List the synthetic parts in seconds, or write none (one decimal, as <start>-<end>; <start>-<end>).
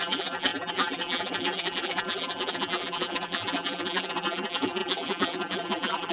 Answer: 0.0-6.1